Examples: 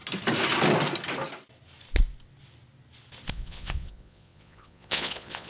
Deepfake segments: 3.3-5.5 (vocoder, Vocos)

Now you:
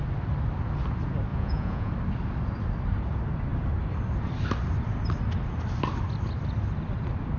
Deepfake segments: 1.3-1.9 (vocoder, Vocos)

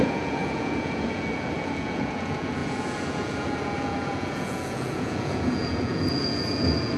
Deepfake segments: 0.0-7.0 (vocoder, Vocos)